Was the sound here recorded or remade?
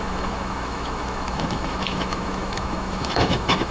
remade